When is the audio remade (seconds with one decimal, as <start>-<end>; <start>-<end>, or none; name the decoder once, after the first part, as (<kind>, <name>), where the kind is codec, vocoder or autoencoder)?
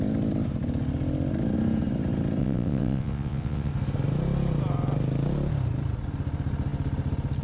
2.4-3.7 (vocoder, WaveNeXt)